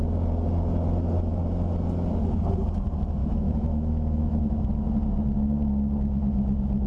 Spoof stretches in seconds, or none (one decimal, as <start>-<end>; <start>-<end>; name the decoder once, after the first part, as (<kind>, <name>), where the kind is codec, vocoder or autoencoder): 3.2-4.6 (autoencoder, DAC-VAE)